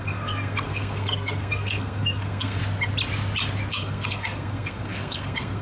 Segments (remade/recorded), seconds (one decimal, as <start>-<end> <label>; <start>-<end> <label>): 0.0-2.6 remade; 2.6-3.7 recorded; 3.7-5.6 remade